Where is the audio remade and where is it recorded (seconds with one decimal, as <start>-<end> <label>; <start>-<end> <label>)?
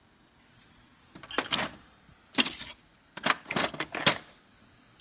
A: 0.0-5.0 recorded